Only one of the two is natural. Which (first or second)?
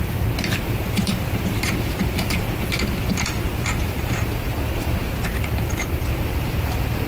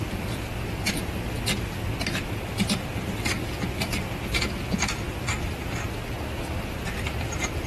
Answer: second